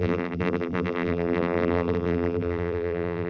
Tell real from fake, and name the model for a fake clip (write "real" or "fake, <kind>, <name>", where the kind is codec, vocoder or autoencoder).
fake, vocoder, BigVGAN v2